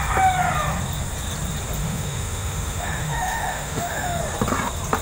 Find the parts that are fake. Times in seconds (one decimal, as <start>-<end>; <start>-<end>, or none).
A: 1.8-4.2